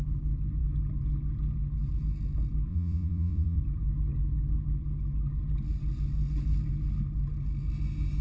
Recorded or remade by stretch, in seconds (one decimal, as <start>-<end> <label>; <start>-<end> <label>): 0.0-2.7 recorded; 2.7-3.6 remade; 3.6-8.2 recorded